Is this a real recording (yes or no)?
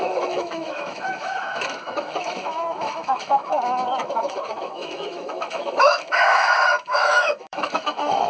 no